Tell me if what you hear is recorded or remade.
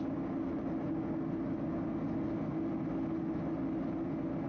recorded